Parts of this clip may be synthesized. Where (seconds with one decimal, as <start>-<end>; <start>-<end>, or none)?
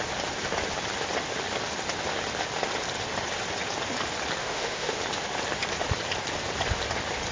4.4-5.0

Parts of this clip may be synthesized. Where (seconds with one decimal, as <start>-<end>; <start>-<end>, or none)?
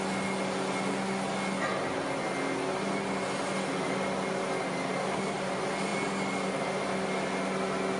none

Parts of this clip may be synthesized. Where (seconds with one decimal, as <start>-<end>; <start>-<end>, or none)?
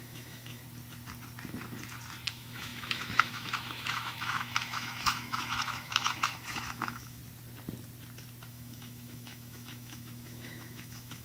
0.0-0.6; 2.3-7.2; 8.5-11.2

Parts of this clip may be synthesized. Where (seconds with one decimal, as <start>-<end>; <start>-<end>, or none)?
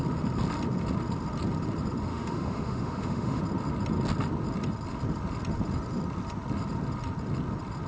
2.1-3.4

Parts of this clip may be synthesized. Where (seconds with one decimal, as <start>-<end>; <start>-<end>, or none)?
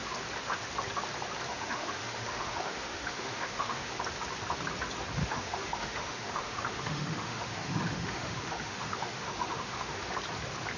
1.5-3.9; 5.2-10.1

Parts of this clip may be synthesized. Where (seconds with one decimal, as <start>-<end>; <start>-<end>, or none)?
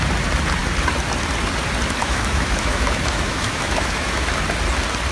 2.0-4.3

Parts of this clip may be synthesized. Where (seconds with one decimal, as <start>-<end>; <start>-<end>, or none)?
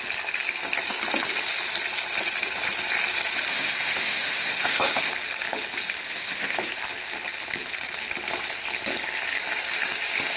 3.5-5.1; 6.0-6.7